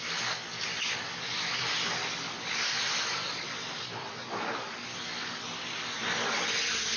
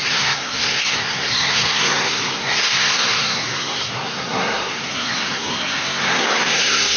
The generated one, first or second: second